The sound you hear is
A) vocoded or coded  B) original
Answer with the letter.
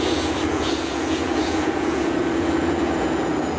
A